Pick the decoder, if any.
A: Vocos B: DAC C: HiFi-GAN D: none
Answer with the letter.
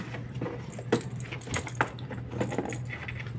D